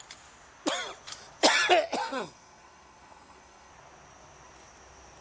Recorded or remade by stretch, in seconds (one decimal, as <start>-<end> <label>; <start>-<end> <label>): 0.0-2.0 recorded; 2.0-3.7 remade; 3.7-5.2 recorded